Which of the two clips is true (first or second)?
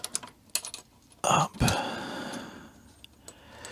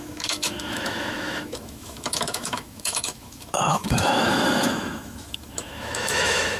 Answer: first